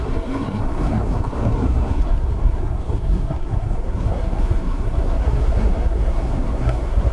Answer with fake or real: fake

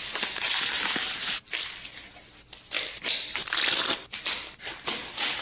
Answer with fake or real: real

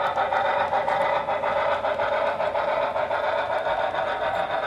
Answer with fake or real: real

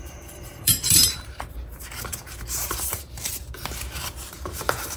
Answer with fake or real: fake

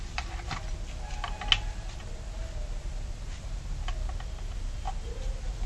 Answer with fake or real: real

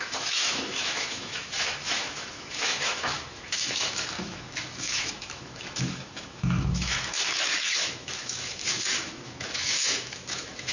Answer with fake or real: fake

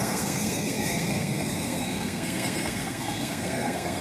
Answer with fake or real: fake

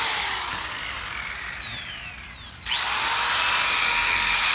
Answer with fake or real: real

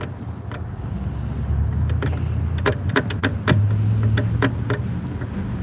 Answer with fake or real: real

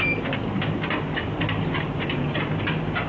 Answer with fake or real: real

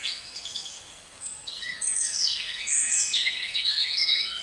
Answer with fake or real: fake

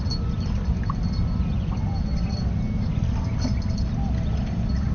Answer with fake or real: real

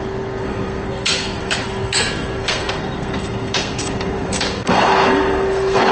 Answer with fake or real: fake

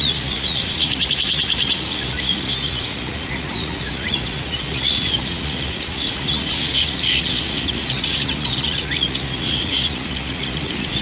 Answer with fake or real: fake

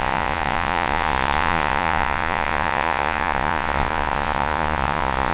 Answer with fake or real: fake